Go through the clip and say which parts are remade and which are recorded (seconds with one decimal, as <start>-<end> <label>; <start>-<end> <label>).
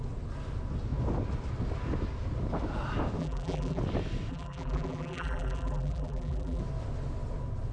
0.0-3.2 recorded; 3.2-3.8 remade; 3.8-4.3 recorded; 4.3-6.6 remade; 6.6-7.7 recorded